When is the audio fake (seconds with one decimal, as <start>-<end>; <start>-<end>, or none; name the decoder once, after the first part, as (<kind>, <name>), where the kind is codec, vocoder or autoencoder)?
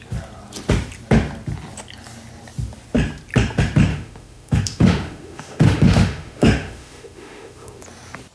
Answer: 3.9-7.8 (autoencoder, DAC-VAE)